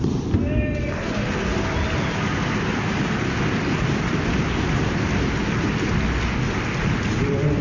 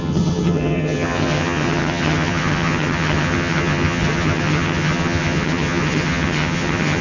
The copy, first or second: second